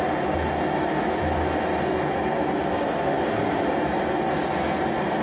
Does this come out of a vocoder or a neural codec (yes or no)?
no